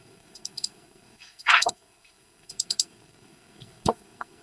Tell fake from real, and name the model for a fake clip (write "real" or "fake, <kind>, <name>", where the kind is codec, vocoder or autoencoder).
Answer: fake, codec, SNAC